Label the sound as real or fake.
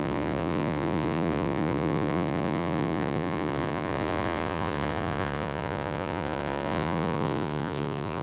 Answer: fake